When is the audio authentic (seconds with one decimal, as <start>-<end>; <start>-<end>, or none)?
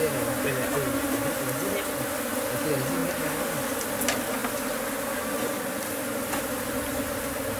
0.0-7.6